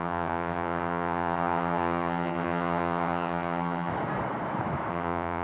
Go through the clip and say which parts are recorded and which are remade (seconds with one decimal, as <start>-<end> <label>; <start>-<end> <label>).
0.0-3.9 remade; 3.9-4.9 recorded; 4.9-5.4 remade